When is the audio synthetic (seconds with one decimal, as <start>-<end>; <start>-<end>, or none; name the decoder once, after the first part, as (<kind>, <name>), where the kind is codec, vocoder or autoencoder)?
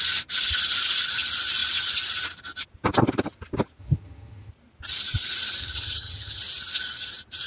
3.8-4.5 (vocoder, HiFi-GAN); 5.6-6.4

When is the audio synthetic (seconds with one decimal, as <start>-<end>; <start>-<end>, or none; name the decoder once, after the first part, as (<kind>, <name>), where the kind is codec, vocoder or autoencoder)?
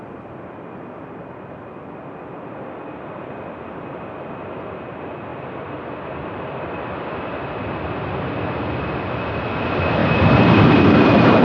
5.3-7.3 (vocoder, BigVGAN v2); 10.0-11.0